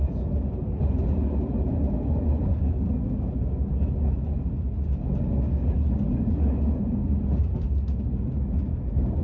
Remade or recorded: recorded